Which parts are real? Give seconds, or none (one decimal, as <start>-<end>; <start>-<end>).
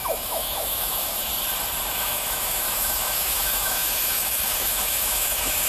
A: 1.3-1.9